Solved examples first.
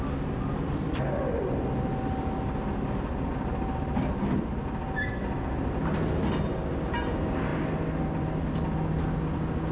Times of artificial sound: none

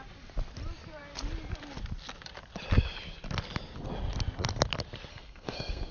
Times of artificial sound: 5.1-5.9

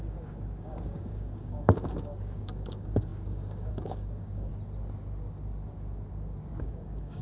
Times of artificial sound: 0.0-4.5; 6.6-7.2